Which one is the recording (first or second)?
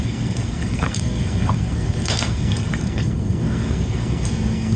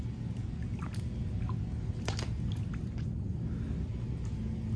second